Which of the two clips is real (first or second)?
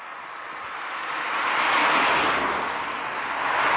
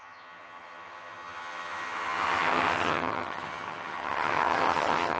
first